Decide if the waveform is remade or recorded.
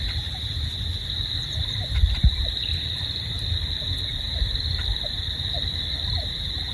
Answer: recorded